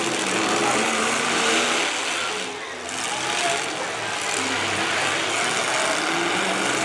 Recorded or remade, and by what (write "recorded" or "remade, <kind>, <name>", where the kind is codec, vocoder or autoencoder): recorded